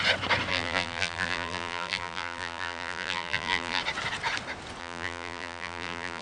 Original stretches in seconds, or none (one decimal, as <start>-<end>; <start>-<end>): 0.0-0.5; 3.8-4.8